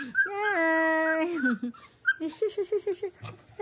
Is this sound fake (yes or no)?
no